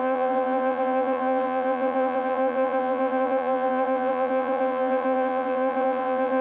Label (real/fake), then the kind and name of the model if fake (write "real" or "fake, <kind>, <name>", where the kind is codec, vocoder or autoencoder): fake, vocoder, Vocos